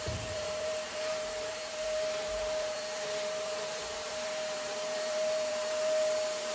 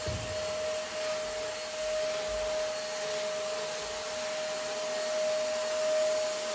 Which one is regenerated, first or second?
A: first